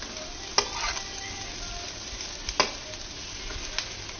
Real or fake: real